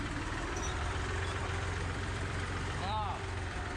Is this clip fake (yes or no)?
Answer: yes